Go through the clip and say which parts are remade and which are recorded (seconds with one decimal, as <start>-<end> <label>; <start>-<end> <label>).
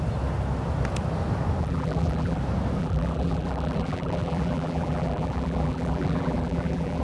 0.0-1.6 recorded; 1.6-2.4 remade; 2.4-2.8 recorded; 2.8-7.0 remade